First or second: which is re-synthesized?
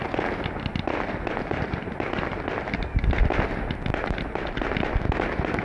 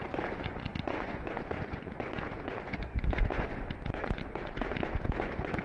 second